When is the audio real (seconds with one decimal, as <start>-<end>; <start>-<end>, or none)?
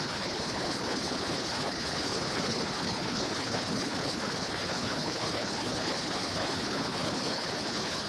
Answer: none